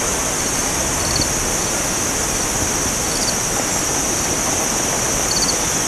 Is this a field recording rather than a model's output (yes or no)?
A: yes